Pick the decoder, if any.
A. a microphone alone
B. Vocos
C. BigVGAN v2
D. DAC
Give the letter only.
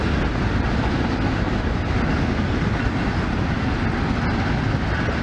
A